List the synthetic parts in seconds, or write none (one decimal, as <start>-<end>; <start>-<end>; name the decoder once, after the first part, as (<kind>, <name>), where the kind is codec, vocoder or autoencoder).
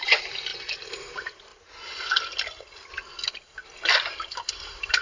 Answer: 0.0-0.5 (vocoder, BigVGAN v2); 1.1-1.5; 4.5-5.0